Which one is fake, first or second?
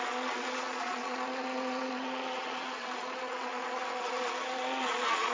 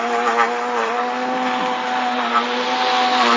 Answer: first